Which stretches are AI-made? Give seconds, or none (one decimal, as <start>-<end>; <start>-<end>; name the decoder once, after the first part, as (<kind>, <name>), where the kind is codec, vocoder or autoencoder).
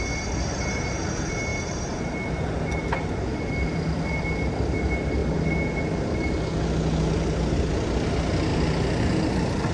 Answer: none